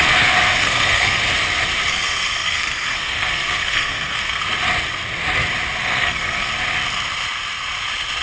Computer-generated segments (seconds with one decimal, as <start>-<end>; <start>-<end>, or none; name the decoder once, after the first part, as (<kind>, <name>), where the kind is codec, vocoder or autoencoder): 0.6-1.2 (codec, SNAC); 1.9-4.4; 5.8-6.5